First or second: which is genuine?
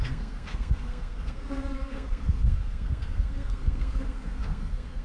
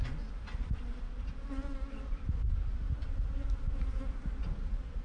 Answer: second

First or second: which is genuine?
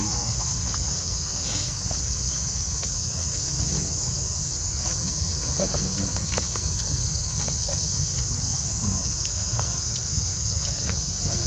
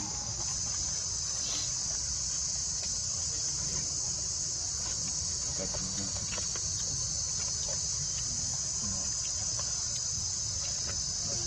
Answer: second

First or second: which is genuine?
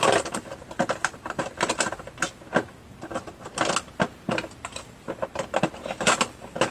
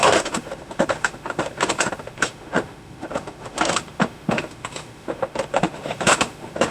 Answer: first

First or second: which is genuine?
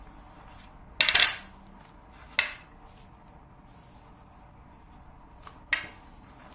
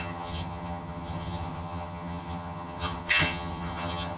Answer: first